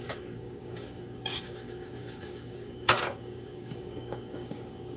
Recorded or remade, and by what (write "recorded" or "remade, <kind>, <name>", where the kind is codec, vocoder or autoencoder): remade, codec, DAC